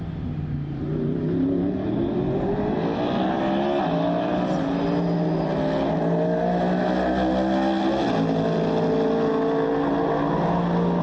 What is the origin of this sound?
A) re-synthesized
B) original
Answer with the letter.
B